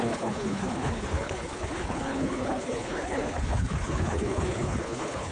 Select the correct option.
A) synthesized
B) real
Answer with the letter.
A